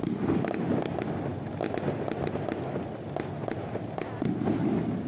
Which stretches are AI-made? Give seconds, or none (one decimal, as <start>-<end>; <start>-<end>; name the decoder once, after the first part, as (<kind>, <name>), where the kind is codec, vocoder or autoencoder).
none